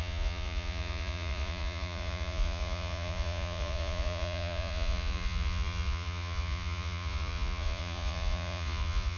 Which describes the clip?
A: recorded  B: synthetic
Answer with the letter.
B